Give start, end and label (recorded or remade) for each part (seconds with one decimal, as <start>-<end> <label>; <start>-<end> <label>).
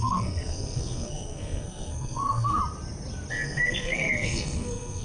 0.0-2.6 remade; 2.6-3.3 recorded; 3.3-5.0 remade